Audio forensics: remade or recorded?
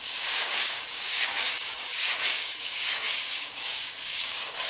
remade